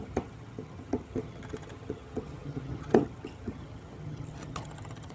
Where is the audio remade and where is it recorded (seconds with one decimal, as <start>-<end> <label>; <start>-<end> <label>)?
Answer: 0.0-5.1 remade